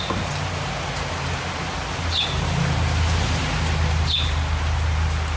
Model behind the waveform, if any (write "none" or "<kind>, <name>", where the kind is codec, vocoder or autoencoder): none